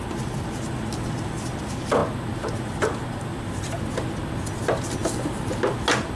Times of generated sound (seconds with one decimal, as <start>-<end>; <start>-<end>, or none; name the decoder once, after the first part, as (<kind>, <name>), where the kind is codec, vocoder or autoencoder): none